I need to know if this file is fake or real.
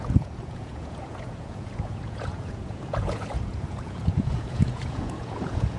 fake